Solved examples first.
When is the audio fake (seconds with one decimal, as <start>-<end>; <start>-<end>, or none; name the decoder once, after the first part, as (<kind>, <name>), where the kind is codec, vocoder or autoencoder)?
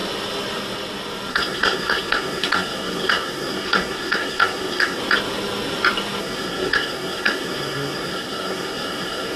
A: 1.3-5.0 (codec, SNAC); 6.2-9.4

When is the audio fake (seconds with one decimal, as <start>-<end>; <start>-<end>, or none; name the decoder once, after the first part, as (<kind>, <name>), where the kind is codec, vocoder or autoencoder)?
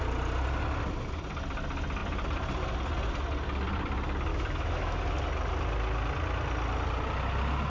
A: 4.3-5.0 (autoencoder, DAC-VAE)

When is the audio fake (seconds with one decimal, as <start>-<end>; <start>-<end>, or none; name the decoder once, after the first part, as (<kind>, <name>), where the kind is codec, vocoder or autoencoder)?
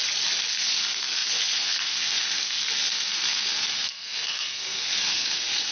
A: 0.5-5.7 (codec, SNAC)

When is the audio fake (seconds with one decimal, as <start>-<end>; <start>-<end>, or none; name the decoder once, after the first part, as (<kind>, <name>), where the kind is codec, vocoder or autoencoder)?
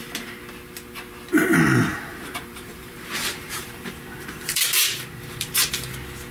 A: 1.9-5.7 (vocoder, BigVGAN v2)